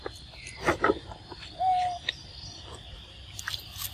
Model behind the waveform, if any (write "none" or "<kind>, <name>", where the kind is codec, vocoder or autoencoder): none